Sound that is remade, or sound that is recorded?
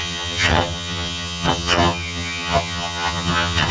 remade